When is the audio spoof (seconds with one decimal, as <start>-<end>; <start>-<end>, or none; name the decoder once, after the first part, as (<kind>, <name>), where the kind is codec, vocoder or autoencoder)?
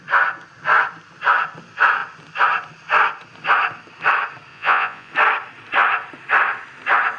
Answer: 4.5-5.1 (vocoder, Vocos)